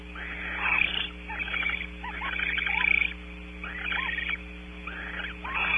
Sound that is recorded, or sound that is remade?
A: recorded